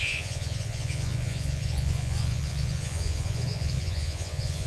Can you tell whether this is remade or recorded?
remade